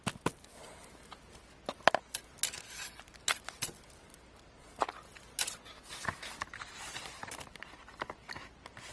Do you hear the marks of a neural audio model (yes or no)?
no